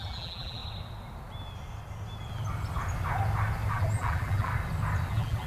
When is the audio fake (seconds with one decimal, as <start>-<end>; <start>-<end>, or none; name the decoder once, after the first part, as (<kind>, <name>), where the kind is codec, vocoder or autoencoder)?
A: 0.0-0.6 (vocoder, BigVGAN v2); 3.7-4.5; 5.1-5.5